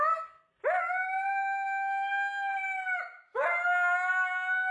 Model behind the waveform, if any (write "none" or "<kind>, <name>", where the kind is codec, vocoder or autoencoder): none